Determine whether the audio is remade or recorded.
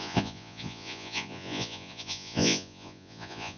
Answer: remade